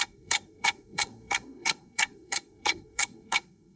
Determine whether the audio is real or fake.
fake